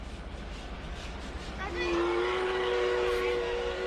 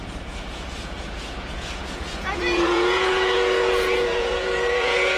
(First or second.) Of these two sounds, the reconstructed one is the second